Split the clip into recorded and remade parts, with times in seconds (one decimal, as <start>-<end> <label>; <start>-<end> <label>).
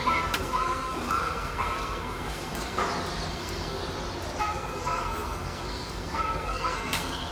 0.0-2.8 remade; 2.8-3.3 recorded; 3.3-3.8 remade; 3.8-4.4 recorded; 4.4-7.3 remade